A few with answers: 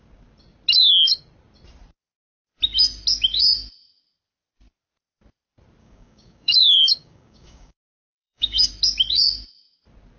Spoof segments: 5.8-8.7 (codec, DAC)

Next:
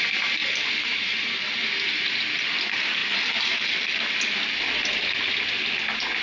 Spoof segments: none

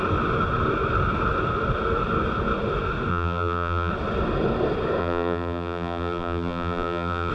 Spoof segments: 3.1-3.9 (vocoder, BigVGAN v2); 5.0-7.3

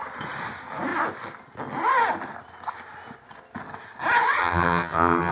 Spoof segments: 4.4-5.3 (vocoder, HiFi-GAN)

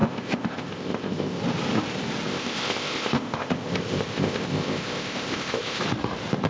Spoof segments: 0.0-1.4 (codec, ZipCodec); 2.3-5.8